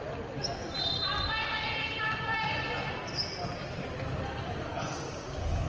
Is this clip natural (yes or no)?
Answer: yes